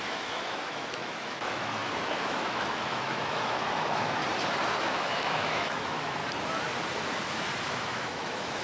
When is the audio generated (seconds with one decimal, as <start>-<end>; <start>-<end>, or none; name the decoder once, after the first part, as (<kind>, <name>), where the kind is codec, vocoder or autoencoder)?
0.0-4.2 (autoencoder, DAC-VAE); 4.8-6.2; 7.7-8.6